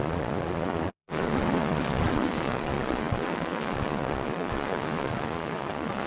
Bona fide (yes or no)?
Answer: no